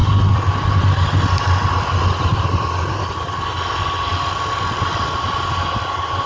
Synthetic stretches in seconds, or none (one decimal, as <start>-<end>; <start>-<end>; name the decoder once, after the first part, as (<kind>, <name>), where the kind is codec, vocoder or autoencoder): none